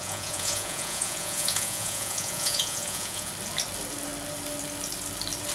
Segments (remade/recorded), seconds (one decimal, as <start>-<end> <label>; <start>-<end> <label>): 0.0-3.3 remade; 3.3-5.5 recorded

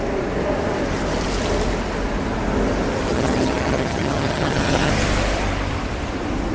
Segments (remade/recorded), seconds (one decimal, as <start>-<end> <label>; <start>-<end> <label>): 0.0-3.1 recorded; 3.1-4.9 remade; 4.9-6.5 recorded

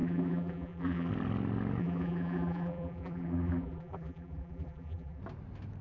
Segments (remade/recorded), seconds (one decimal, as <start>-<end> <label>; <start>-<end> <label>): 0.0-1.1 remade; 1.1-1.8 recorded; 1.8-5.2 remade; 5.2-5.8 recorded

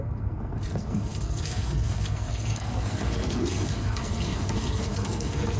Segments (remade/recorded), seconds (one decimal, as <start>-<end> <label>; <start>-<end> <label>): 0.0-5.6 remade